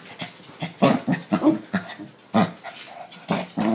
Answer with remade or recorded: recorded